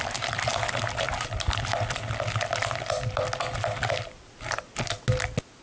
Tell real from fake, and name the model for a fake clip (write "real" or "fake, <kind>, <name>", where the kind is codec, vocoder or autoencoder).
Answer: real